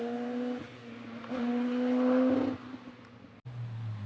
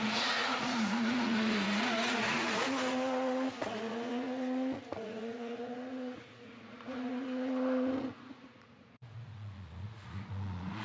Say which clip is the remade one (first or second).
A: second